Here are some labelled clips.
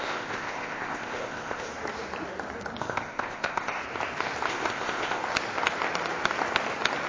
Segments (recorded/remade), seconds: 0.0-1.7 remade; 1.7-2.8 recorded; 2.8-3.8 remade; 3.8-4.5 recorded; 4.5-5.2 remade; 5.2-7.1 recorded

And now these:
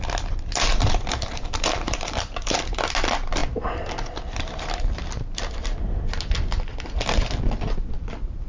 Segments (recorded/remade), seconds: 0.0-0.7 recorded; 0.7-2.8 remade; 2.8-8.5 recorded

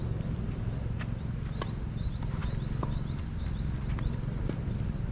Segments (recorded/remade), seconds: 0.0-5.1 recorded

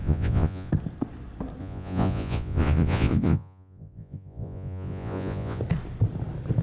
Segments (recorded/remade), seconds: 0.0-0.7 remade; 0.7-1.6 recorded; 1.6-5.6 remade; 5.6-6.6 recorded

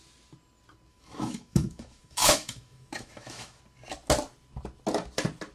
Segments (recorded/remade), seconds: 0.0-0.9 recorded; 0.9-3.6 remade; 3.6-5.5 recorded